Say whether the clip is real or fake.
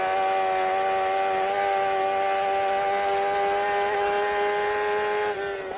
real